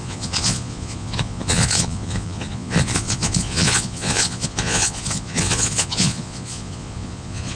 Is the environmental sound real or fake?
fake